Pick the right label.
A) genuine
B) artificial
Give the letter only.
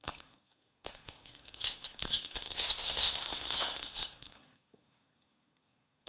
B